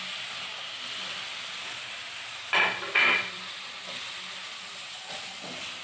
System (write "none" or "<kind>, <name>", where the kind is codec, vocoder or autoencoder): none